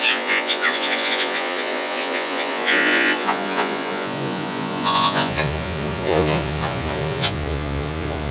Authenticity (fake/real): fake